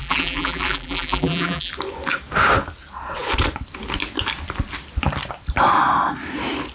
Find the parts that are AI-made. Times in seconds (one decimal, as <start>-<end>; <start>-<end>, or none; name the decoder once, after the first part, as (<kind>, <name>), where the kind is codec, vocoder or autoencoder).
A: 0.0-1.7 (vocoder, BigVGAN v2)